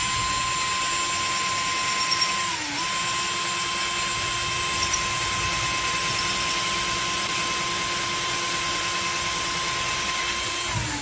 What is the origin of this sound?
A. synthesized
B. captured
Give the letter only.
B